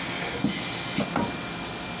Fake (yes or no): no